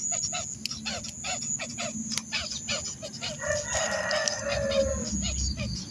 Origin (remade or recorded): recorded